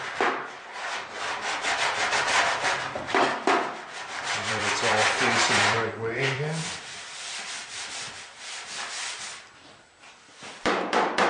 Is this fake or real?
fake